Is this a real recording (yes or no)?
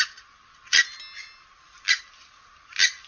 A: yes